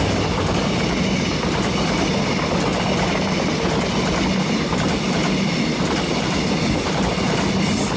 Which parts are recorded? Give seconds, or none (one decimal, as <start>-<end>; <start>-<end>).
0.0-8.0